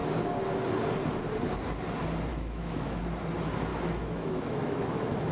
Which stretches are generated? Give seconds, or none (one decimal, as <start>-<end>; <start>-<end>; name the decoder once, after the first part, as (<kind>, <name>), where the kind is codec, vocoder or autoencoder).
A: 2.3-3.0 (autoencoder, DAC-VAE); 3.7-5.3